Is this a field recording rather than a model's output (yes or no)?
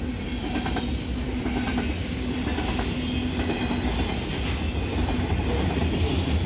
yes